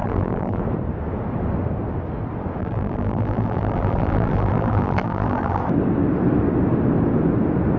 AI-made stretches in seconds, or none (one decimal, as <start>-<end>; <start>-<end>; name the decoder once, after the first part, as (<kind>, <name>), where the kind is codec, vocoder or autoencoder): 0.0-0.6 (vocoder, BigVGAN v2); 2.6-5.6